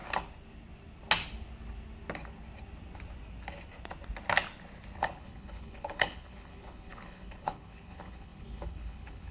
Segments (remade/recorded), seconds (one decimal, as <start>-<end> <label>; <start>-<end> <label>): 0.0-5.0 recorded; 5.0-9.3 remade